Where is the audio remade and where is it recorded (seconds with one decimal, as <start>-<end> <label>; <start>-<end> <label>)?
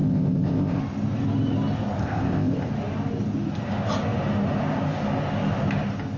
0.0-0.8 remade; 0.8-2.0 recorded; 2.0-2.7 remade; 2.7-6.2 recorded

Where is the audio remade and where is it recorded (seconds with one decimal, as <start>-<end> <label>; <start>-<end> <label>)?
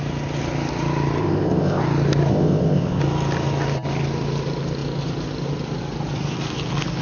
0.0-1.2 recorded; 1.2-1.8 remade; 1.8-2.3 recorded; 2.3-3.0 remade; 3.0-7.0 recorded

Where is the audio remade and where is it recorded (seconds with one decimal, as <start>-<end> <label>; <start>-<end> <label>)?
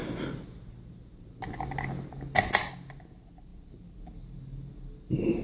0.0-5.4 recorded